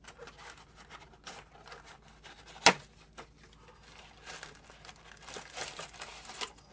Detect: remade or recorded recorded